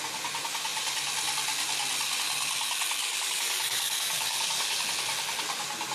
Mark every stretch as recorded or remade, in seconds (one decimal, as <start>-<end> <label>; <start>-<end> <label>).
0.0-3.0 recorded; 3.0-4.8 remade; 4.8-5.9 recorded